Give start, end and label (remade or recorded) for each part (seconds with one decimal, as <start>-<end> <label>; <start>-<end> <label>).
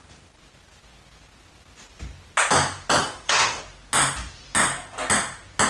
0.0-3.0 recorded; 3.0-3.6 remade; 3.6-5.7 recorded